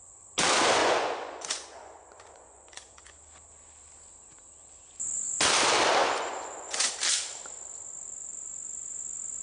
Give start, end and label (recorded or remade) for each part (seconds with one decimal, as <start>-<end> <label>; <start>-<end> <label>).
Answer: 0.0-0.8 recorded; 0.8-3.2 remade; 3.2-6.0 recorded; 6.0-6.9 remade; 6.9-9.4 recorded